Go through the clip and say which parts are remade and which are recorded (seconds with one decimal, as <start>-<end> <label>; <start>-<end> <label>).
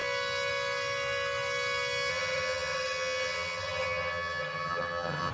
0.0-2.1 recorded; 2.1-5.3 remade